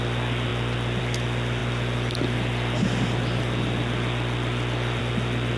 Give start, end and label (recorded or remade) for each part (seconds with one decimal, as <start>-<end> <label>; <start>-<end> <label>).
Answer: 0.0-5.6 recorded